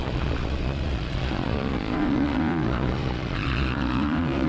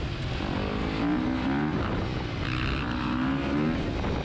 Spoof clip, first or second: first